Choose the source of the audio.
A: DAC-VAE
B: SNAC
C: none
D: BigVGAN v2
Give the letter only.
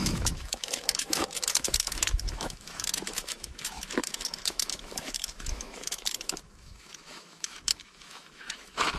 A